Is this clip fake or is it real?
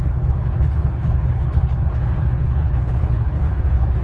fake